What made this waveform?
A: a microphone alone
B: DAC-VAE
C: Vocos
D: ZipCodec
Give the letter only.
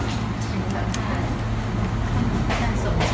A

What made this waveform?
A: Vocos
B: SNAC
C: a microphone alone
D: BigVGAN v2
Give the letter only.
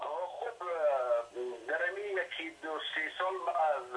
C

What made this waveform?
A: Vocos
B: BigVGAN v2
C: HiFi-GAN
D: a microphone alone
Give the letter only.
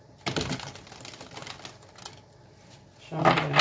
D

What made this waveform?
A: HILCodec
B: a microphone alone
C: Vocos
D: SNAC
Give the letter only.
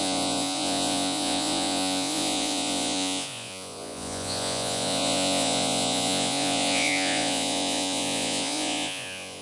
C